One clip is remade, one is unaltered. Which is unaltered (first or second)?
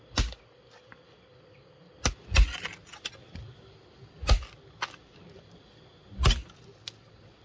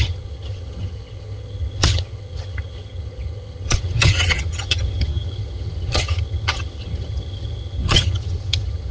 first